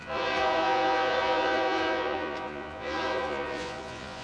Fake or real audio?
fake